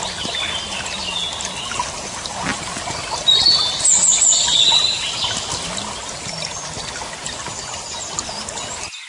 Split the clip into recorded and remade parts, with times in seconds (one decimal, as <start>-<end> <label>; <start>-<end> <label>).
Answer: 0.0-9.1 recorded